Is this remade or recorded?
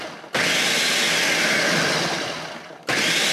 recorded